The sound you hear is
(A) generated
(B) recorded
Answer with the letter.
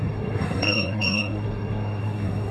A